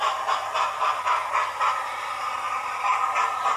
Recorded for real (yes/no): yes